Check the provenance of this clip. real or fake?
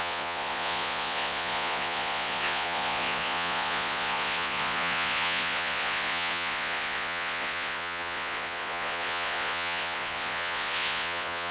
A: fake